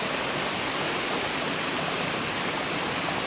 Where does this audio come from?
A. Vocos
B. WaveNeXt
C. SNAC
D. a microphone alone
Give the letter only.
D